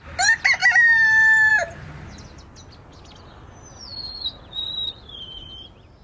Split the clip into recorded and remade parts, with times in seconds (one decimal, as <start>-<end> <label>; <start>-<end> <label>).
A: 0.0-0.6 recorded; 0.6-1.5 remade; 1.5-6.0 recorded